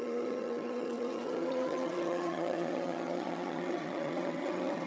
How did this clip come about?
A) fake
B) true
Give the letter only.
A